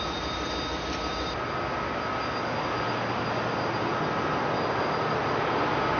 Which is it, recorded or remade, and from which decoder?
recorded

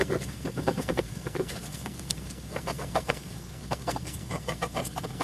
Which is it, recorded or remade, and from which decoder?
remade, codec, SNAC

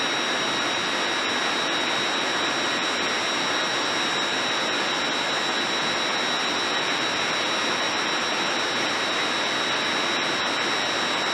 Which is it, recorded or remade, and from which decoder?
recorded